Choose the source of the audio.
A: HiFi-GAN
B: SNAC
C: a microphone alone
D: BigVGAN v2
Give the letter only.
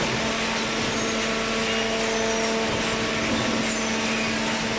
C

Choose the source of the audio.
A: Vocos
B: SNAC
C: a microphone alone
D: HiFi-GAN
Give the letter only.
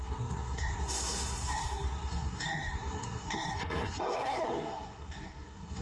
B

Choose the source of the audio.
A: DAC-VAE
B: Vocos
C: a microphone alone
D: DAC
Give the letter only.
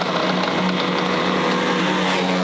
C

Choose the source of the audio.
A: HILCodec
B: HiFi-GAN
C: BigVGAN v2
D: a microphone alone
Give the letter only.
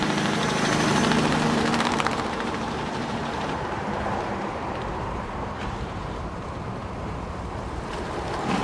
C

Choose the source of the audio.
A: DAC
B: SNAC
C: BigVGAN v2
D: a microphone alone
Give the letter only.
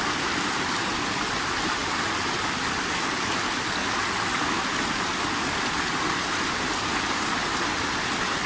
D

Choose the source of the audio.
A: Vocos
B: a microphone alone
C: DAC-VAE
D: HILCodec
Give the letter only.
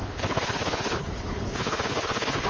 D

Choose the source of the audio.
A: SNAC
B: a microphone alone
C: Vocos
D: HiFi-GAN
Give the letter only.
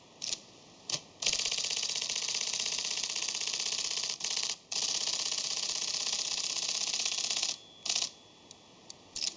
B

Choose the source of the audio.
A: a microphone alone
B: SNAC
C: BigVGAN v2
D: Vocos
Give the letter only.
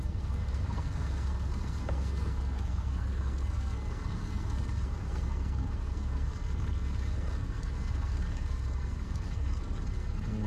B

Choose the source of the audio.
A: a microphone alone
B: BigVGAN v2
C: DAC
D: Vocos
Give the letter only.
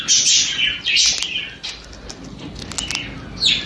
A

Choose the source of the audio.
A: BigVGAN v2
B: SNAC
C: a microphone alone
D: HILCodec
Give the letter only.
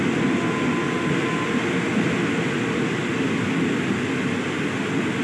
C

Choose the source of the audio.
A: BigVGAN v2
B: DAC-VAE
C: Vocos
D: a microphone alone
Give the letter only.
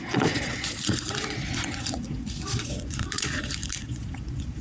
C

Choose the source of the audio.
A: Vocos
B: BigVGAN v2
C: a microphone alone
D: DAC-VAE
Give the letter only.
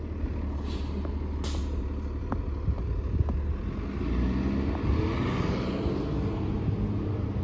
C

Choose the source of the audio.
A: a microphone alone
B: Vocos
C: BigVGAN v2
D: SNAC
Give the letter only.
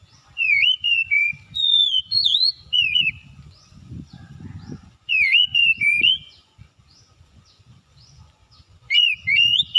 B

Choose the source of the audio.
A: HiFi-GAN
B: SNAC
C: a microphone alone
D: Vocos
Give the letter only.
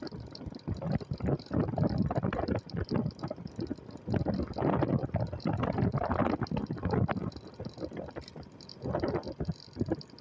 C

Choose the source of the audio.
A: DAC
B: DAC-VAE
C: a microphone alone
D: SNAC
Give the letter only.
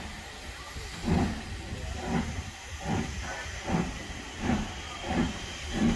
C